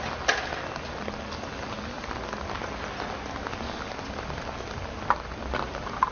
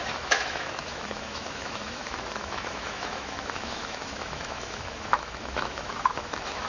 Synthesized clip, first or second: second